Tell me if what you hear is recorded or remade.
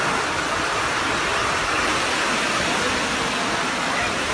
recorded